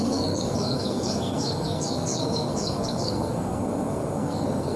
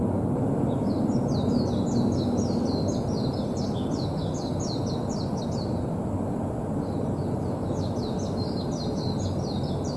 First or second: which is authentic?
second